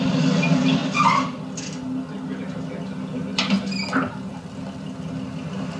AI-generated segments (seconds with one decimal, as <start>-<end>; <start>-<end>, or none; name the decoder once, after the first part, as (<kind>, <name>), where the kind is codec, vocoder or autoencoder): none